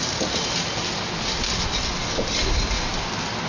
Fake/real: real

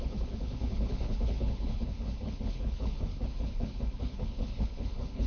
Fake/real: fake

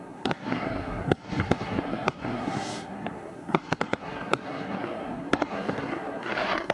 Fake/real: fake